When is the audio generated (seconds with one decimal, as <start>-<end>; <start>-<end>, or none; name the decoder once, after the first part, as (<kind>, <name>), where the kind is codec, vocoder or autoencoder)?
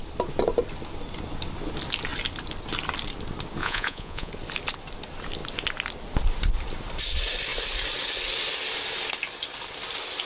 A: 3.6-4.3 (vocoder, Vocos)